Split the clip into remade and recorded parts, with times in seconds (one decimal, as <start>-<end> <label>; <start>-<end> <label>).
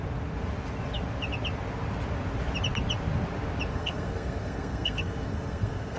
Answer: 0.0-3.7 recorded; 3.7-6.0 remade